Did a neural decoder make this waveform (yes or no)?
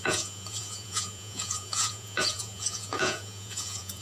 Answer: yes